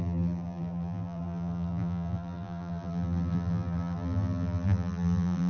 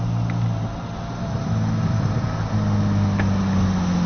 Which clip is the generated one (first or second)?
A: first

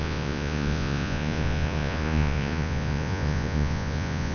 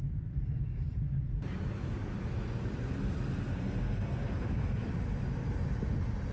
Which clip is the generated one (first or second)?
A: first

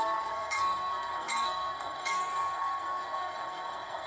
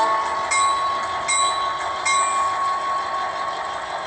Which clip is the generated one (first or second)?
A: first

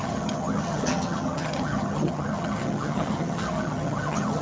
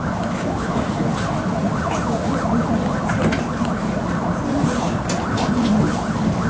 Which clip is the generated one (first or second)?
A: first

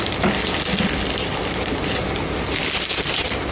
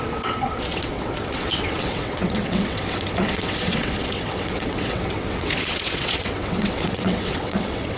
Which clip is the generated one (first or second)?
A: second